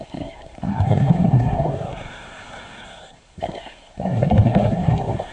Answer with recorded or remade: remade